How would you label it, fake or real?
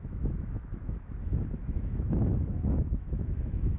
fake